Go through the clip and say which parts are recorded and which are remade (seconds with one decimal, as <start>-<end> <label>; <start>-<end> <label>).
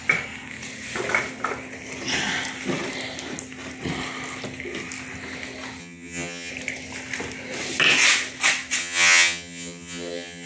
0.0-5.8 recorded; 5.8-6.5 remade; 6.5-8.8 recorded; 8.8-10.5 remade